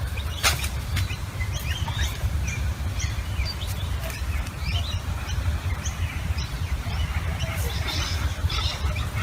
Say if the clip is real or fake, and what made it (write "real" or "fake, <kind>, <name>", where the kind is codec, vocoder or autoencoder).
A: fake, vocoder, BigVGAN v2